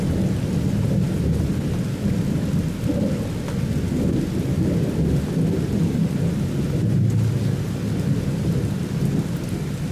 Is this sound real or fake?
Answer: real